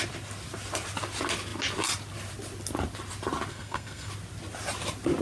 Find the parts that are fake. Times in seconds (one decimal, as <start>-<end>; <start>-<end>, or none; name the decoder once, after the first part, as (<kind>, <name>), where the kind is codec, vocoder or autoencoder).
3.5-4.1 (codec, SNAC)